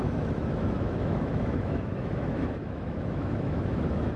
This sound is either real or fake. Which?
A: fake